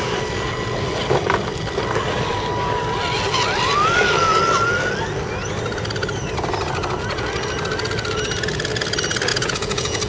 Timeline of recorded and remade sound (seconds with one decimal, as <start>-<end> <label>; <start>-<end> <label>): 0.0-9.3 recorded; 9.3-10.1 remade